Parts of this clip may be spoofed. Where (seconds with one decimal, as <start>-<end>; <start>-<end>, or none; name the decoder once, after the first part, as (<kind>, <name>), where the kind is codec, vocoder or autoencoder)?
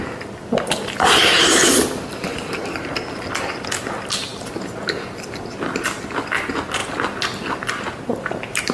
1.2-1.8 (vocoder, BigVGAN v2); 2.3-3.0